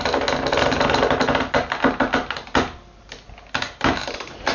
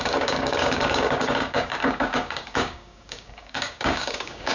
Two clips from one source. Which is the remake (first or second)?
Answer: second